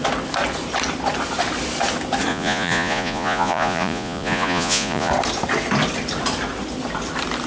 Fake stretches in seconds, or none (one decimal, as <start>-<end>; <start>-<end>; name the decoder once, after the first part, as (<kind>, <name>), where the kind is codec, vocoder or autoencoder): 2.3-5.1 (vocoder, Vocos)